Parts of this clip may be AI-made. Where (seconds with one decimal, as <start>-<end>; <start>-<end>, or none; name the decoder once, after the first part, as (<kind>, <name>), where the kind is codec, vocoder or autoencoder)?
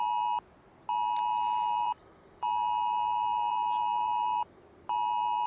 1.3-4.6 (vocoder, BigVGAN v2)